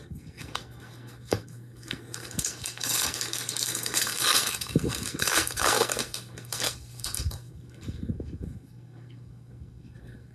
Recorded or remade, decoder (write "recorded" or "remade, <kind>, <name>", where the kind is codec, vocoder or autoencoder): remade, codec, SNAC